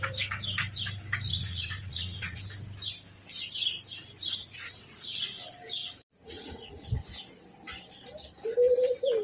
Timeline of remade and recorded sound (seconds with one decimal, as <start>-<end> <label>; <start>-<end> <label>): 0.0-1.3 recorded; 1.3-2.4 remade; 2.4-4.2 recorded; 4.2-5.2 remade; 5.2-5.8 recorded; 5.8-6.9 remade; 6.9-9.2 recorded